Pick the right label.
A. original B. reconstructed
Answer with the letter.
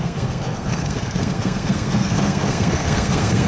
B